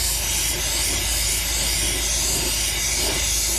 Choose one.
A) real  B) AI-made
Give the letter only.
A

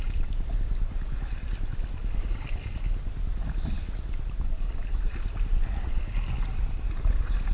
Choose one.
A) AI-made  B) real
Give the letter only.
B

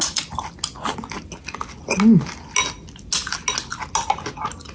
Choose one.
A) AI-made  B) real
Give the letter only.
B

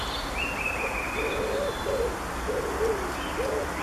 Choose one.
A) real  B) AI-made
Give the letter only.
B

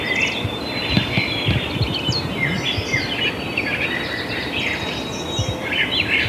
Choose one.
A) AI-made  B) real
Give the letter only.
A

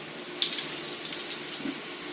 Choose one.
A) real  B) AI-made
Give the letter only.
A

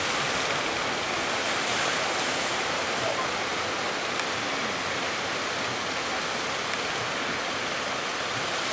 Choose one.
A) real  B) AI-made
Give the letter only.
A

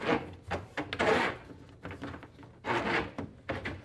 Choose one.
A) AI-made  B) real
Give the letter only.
B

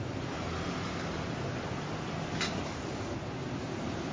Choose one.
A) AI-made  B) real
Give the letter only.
A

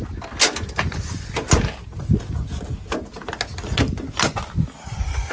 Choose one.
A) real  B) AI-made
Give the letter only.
A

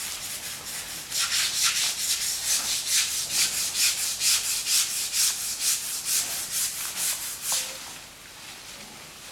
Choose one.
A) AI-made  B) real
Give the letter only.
A